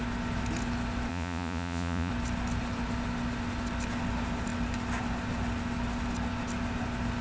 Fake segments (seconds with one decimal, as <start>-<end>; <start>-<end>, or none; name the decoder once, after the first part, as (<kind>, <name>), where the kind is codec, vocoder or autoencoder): 1.1-2.1 (vocoder, Vocos)

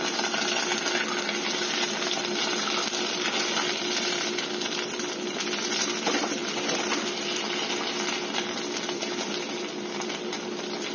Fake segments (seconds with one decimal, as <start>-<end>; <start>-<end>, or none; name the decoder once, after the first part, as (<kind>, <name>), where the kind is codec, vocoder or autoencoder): none

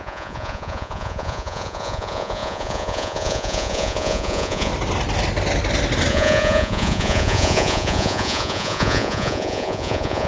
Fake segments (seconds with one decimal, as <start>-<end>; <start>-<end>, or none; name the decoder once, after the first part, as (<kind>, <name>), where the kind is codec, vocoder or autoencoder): 0.0-4.7 (vocoder, Vocos); 6.1-10.3

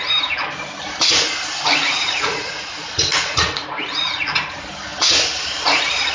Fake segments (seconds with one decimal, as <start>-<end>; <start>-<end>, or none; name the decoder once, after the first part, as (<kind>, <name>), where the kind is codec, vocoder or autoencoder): 1.8-4.2 (vocoder, Vocos)

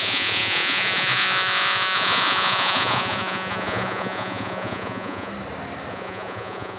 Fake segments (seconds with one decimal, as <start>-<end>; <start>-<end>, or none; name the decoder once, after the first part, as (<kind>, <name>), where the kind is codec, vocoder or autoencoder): 0.0-5.3 (vocoder, Vocos); 5.9-6.8